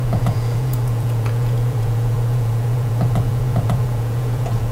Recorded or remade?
remade